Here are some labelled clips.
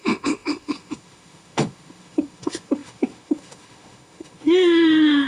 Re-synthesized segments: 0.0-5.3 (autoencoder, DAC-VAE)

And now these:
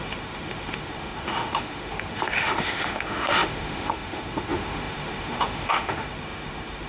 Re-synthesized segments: 0.0-6.9 (autoencoder, DAC-VAE)

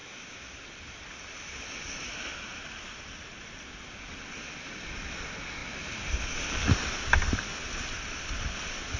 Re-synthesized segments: 0.0-0.6 (autoencoder, DAC-VAE)

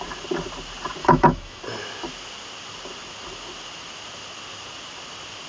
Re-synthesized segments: 1.0-1.6 (autoencoder, DAC-VAE)